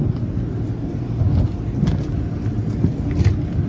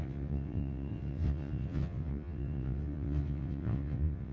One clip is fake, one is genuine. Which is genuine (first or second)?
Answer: first